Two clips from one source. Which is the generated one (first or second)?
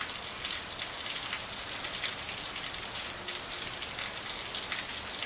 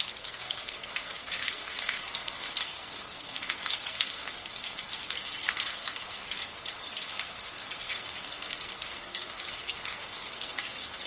second